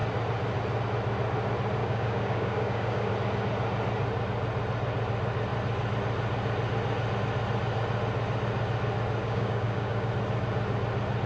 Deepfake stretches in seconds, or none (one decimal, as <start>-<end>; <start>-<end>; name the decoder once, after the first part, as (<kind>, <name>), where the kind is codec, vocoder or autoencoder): 1.8-3.1 (codec, DAC); 9.2-10.1